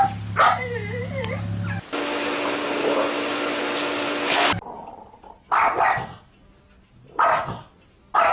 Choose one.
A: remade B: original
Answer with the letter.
B